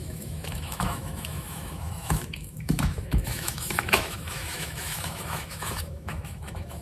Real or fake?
fake